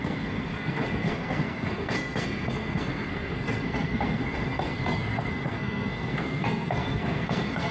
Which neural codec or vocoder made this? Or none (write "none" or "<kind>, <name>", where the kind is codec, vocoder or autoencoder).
codec, SNAC